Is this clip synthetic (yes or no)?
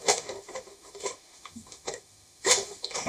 yes